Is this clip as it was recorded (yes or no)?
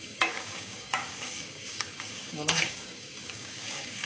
no